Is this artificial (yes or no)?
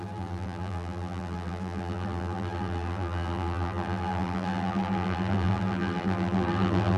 yes